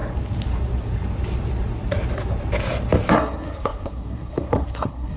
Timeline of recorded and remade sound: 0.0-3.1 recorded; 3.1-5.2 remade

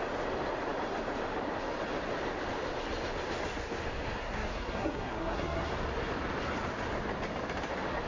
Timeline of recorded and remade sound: 0.0-4.2 recorded; 4.2-5.7 remade; 5.7-8.1 recorded

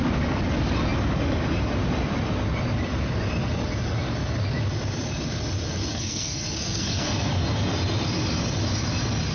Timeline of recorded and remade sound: 0.0-5.9 recorded; 5.9-7.3 remade; 7.3-9.3 recorded